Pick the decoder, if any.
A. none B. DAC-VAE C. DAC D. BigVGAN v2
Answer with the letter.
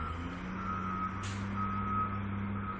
A